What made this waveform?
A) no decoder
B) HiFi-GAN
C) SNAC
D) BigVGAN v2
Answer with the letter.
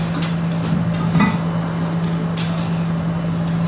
A